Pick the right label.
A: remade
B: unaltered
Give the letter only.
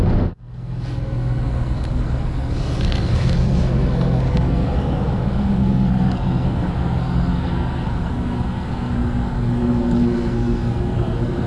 A